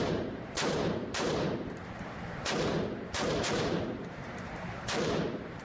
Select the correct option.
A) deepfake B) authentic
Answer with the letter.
A